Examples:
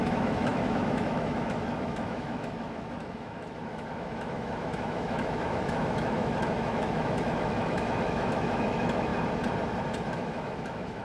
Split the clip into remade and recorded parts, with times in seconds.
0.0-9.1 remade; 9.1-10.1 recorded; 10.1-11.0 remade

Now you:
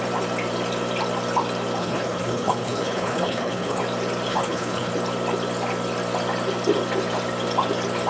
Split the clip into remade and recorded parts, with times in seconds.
0.0-1.8 recorded; 1.8-3.8 remade; 3.8-4.3 recorded; 4.3-4.9 remade; 4.9-8.1 recorded